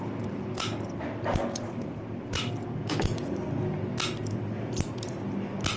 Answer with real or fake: real